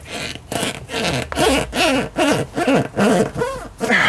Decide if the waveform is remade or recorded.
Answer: recorded